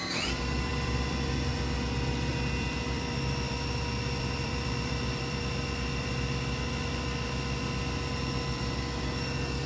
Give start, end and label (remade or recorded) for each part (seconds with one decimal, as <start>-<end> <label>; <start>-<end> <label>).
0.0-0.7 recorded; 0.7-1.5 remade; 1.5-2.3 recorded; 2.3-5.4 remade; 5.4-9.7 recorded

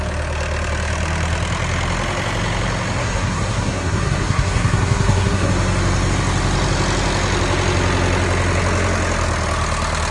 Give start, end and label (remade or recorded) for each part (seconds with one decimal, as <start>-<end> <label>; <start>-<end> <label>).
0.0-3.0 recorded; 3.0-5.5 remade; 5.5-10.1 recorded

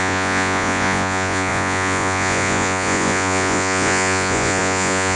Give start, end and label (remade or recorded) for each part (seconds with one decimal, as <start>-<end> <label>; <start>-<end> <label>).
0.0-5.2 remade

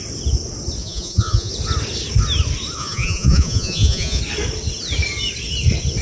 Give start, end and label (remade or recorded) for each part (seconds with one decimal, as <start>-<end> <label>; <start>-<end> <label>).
0.0-0.8 recorded; 0.8-1.5 remade; 1.5-2.8 recorded; 2.8-4.2 remade; 4.2-6.0 recorded